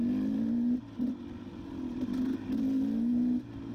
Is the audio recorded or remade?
recorded